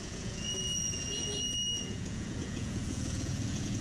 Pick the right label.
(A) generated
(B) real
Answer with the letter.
A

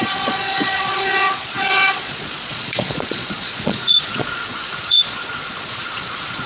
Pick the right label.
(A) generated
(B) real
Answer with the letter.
A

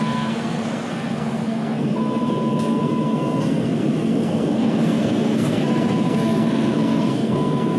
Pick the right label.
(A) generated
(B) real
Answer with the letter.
A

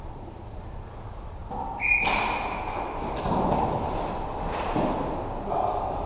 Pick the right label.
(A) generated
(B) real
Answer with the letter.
B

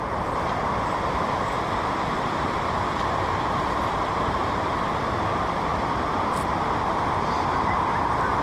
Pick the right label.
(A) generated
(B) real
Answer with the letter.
A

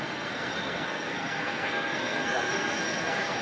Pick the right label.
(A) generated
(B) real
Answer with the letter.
A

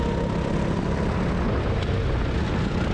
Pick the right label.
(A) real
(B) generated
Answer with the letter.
A